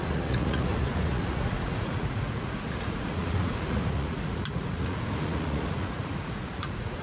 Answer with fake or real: fake